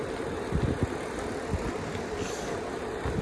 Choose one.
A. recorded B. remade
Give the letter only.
A